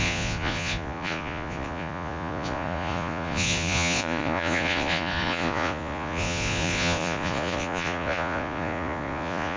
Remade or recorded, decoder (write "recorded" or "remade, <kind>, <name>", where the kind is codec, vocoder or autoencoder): remade, vocoder, Vocos